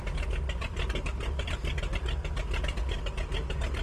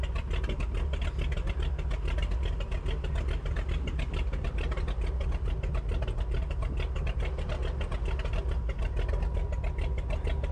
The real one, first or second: second